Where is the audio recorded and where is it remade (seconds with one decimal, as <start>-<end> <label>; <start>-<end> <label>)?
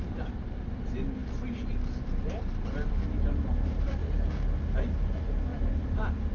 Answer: 0.0-1.2 remade; 1.2-2.0 recorded; 2.0-4.0 remade; 4.0-4.8 recorded; 4.8-6.3 remade